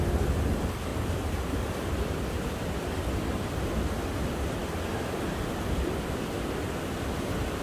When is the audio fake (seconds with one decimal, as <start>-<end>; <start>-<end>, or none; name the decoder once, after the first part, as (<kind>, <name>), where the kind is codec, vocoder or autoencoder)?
none

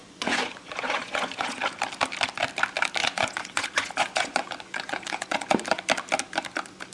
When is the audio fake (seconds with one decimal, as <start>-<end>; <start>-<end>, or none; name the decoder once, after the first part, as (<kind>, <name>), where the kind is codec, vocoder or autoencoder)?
0.0-1.6 (vocoder, Vocos); 3.0-5.5